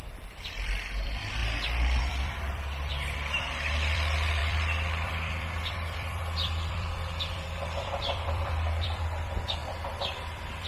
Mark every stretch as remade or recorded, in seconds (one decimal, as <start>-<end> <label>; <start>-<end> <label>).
0.0-1.4 remade; 1.4-2.0 recorded; 2.0-10.7 remade